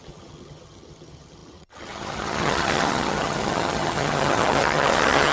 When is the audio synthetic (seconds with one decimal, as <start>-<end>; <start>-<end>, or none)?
0.0-5.3